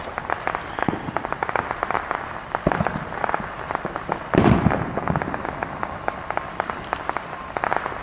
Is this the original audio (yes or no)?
yes